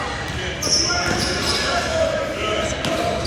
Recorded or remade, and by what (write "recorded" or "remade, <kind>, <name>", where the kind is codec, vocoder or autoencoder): recorded